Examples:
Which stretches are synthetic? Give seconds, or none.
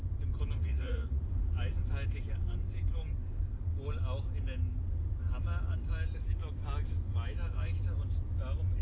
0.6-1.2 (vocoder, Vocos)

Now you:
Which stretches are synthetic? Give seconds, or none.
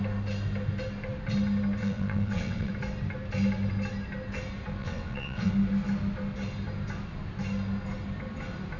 1.8-2.7 (vocoder, WaveNeXt); 4.8-5.5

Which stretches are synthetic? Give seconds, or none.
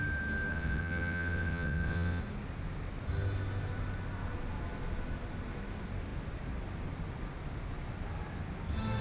0.5-2.2 (vocoder, WaveNeXt)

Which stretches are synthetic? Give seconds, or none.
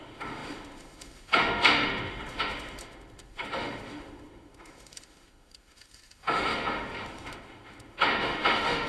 0.0-8.9 (autoencoder, DAC-VAE)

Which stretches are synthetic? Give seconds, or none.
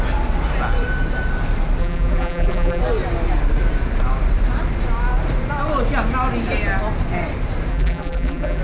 1.8-2.8 (vocoder, BigVGAN v2); 7.7-8.6